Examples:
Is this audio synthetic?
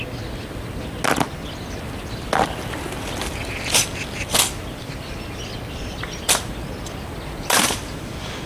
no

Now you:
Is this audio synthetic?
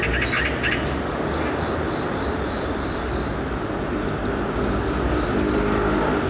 no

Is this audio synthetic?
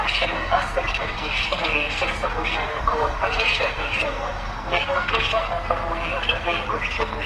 yes